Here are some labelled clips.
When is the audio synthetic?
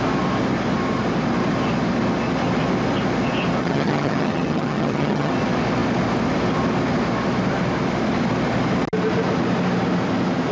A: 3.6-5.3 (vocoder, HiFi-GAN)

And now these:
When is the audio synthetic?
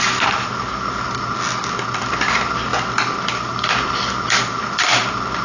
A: none